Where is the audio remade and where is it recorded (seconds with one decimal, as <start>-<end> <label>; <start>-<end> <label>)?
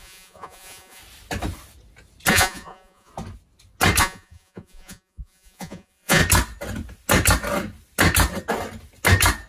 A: 0.0-1.0 remade; 1.0-2.3 recorded; 2.3-3.1 remade; 3.1-4.0 recorded; 4.0-6.2 remade; 6.2-9.5 recorded